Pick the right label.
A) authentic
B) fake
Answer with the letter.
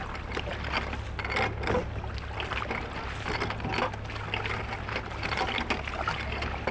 A